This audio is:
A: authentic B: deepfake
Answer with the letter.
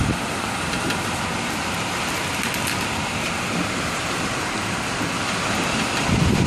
B